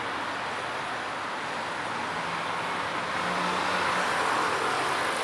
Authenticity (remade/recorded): recorded